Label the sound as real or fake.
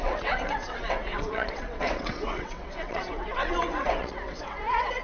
fake